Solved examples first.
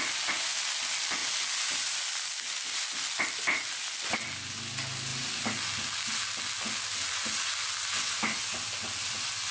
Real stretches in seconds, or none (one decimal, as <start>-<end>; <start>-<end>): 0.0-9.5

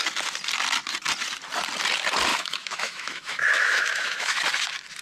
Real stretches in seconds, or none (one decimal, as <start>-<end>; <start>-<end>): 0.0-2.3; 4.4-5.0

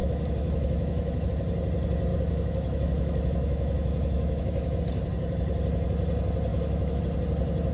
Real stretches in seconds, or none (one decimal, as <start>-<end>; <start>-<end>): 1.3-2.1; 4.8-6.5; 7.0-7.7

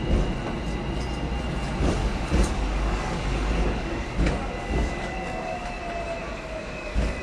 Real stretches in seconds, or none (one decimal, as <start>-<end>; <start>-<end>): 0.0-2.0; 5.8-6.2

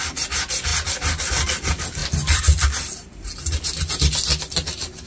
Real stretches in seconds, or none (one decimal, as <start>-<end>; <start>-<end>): 0.0-5.1

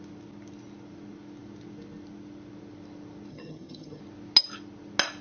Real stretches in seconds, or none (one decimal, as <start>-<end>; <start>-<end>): 0.0-3.3; 4.0-5.2